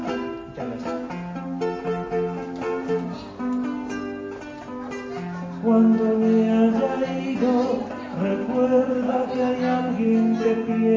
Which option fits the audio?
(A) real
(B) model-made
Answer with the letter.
A